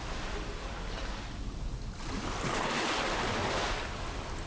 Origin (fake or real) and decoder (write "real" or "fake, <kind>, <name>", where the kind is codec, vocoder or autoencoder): real